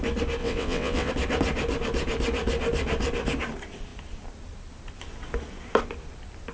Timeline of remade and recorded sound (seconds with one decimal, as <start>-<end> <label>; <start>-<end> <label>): 0.0-0.4 recorded; 0.4-1.1 remade; 1.1-6.5 recorded